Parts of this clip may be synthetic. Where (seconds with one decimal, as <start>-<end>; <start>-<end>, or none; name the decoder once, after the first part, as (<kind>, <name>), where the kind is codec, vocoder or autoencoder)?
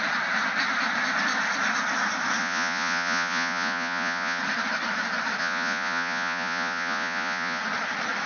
2.4-4.4 (vocoder, Vocos); 5.4-7.6